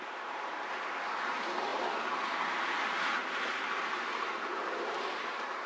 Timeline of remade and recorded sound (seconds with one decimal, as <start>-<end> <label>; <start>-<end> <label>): 0.0-1.7 remade; 1.7-2.6 recorded; 2.6-5.7 remade